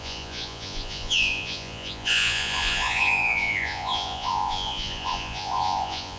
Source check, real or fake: fake